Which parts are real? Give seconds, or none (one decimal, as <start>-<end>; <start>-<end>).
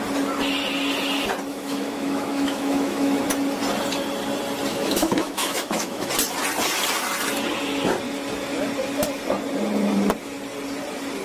0.0-1.5; 3.2-4.7; 6.1-11.2